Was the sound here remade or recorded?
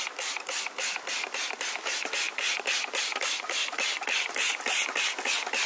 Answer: recorded